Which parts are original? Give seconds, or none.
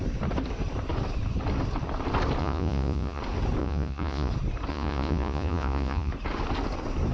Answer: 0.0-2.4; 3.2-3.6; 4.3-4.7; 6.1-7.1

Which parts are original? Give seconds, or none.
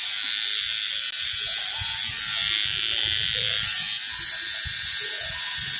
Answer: 0.0-5.8